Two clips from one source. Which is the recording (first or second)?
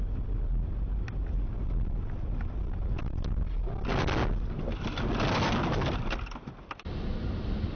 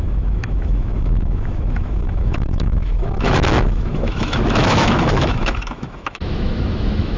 first